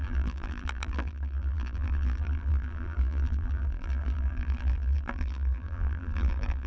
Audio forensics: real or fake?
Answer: fake